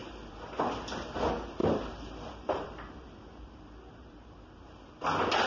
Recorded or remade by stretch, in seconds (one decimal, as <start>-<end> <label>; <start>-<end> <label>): 0.0-0.6 remade; 0.6-1.6 recorded; 1.6-4.9 remade; 4.9-5.5 recorded